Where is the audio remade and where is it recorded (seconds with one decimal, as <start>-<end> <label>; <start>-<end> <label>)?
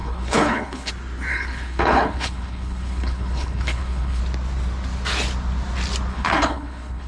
0.0-0.9 remade; 0.9-1.3 recorded; 1.3-4.2 remade; 4.2-6.1 recorded; 6.1-7.1 remade